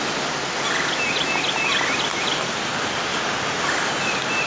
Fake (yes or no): no